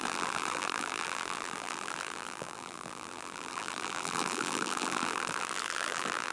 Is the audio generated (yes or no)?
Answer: yes